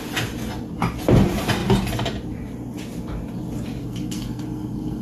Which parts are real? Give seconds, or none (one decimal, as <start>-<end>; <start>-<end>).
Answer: 0.0-3.8